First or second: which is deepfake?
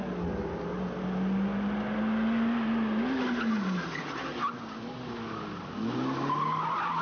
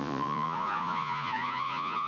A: second